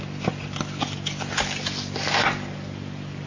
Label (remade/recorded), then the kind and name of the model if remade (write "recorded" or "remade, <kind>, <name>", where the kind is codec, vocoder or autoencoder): recorded